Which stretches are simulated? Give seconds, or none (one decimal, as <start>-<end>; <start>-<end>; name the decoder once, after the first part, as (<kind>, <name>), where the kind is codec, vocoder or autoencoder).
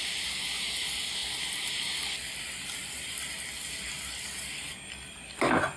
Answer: none